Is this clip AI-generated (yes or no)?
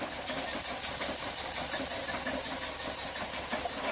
no